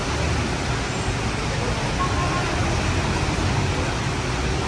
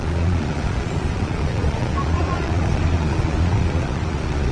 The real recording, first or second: first